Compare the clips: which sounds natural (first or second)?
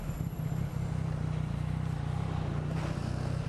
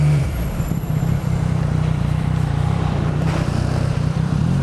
first